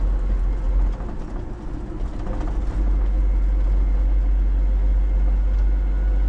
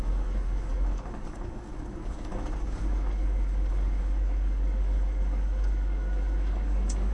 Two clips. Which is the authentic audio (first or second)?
first